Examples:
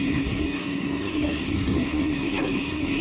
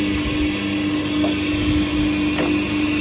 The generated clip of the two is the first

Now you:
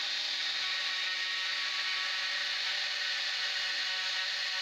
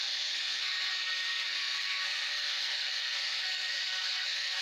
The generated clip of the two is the second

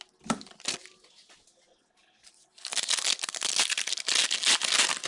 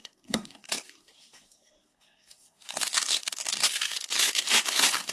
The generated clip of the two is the second